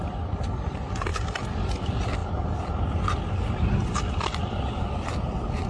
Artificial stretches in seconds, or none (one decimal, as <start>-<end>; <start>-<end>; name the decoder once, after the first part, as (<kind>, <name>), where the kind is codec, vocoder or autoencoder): none